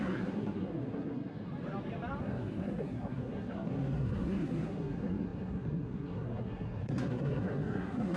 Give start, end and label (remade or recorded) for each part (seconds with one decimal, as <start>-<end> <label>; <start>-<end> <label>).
0.0-1.5 remade; 1.5-2.2 recorded; 2.2-8.2 remade